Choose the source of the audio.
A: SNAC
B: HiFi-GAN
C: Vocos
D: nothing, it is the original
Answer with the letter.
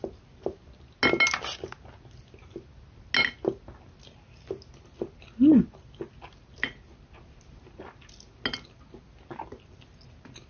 D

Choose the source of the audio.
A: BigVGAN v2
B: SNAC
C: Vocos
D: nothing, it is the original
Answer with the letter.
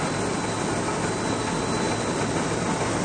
D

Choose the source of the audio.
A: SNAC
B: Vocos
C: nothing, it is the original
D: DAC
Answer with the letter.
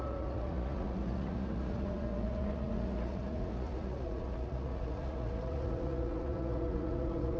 B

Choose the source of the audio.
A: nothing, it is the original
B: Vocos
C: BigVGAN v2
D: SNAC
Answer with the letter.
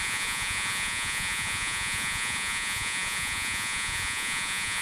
B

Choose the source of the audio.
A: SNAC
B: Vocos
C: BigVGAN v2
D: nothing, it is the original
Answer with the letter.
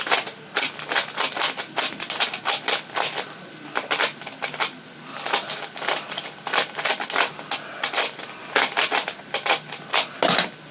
D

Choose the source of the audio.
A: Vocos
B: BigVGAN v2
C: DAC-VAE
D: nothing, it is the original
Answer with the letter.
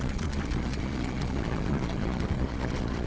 A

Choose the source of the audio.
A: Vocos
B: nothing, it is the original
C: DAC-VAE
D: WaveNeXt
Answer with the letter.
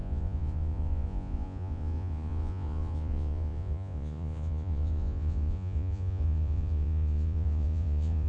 A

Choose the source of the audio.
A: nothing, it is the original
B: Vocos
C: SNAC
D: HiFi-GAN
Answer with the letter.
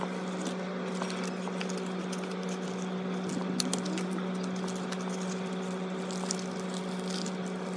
A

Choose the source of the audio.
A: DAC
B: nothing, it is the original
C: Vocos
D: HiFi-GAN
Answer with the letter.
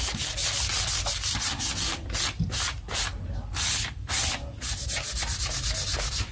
B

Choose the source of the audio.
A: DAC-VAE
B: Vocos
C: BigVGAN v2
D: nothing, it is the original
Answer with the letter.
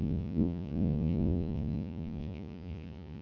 B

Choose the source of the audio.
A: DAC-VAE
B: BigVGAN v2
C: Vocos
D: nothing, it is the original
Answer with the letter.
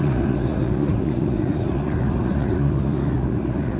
C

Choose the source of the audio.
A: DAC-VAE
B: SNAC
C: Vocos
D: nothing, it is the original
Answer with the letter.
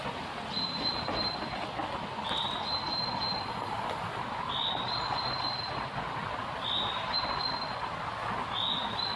D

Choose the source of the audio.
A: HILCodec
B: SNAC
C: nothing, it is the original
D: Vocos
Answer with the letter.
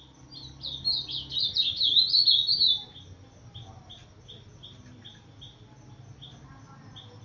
C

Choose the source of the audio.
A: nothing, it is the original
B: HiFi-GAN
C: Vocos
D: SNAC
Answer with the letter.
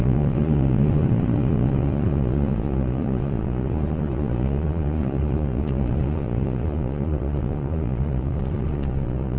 C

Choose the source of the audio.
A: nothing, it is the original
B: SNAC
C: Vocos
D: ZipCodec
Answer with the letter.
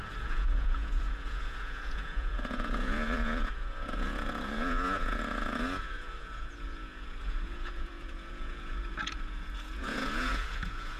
C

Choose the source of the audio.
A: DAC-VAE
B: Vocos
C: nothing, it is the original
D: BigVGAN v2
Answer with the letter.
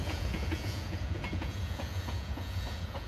B